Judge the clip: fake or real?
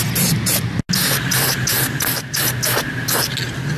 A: real